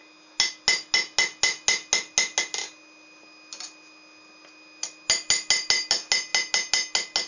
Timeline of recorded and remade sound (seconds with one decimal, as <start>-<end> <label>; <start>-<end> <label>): 0.0-7.3 recorded

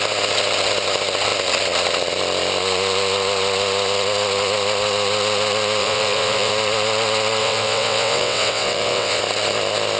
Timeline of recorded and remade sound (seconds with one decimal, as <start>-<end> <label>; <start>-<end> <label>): 0.0-5.8 recorded; 5.8-6.5 remade; 6.5-7.4 recorded; 7.4-9.2 remade; 9.2-10.0 recorded

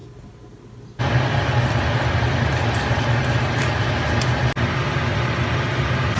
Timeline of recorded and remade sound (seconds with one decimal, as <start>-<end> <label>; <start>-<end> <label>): 0.0-6.2 recorded

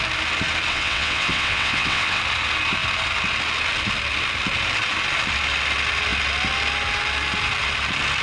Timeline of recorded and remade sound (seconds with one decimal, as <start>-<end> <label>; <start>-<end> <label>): 0.0-0.7 recorded; 0.7-2.2 remade; 2.2-8.2 recorded

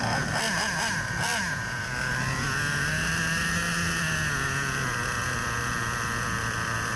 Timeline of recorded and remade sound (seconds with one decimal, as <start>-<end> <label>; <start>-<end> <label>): 0.0-7.0 recorded

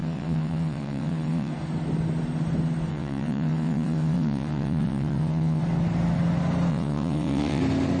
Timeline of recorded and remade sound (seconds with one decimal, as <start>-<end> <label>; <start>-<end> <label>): 0.0-1.5 remade; 1.5-2.9 recorded; 2.9-5.6 remade; 5.6-6.7 recorded; 6.7-7.6 remade; 7.6-8.0 recorded

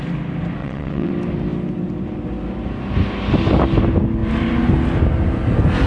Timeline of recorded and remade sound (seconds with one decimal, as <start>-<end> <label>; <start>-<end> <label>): 0.0-0.6 recorded; 0.6-1.1 remade; 1.1-5.9 recorded

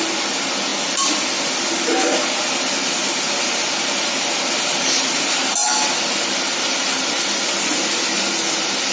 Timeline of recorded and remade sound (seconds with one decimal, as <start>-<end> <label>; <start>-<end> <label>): 0.0-8.9 recorded